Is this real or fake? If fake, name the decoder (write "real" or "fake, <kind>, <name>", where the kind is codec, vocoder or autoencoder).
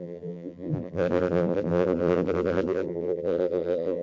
fake, vocoder, BigVGAN v2